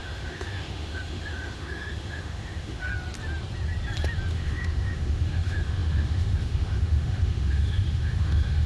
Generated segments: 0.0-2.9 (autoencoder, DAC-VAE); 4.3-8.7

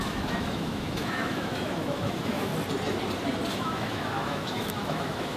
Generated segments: 0.0-2.5 (autoencoder, DAC-VAE); 3.5-5.4

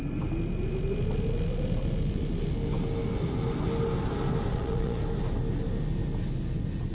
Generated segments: 4.5-5.0 (vocoder, Vocos)

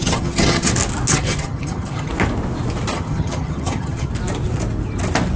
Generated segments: 0.0-0.7 (vocoder, HiFi-GAN); 1.1-2.1; 2.9-4.1

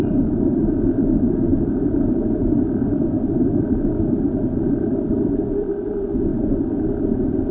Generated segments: 0.0-6.3 (vocoder, BigVGAN v2); 7.0-7.5

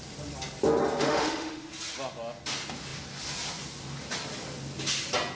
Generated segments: 1.0-1.7 (autoencoder, DAC-VAE)

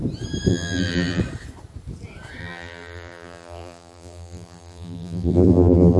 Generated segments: 0.5-1.2 (vocoder, BigVGAN v2); 2.4-6.0

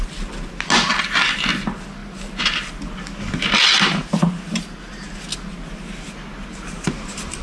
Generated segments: 2.0-2.7 (vocoder, BigVGAN v2); 6.5-7.4